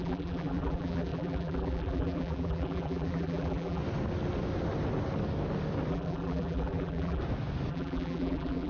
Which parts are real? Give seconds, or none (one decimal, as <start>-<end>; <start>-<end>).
3.8-5.9; 7.2-7.7